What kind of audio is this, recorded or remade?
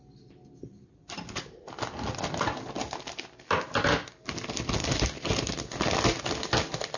recorded